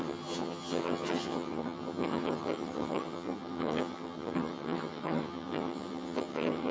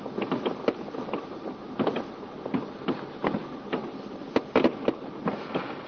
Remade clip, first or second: first